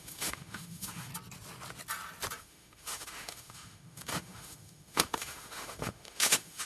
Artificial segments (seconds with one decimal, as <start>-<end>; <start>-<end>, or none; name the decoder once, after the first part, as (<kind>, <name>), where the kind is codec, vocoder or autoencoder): 0.0-1.1 (autoencoder, DAC-VAE); 2.4-6.7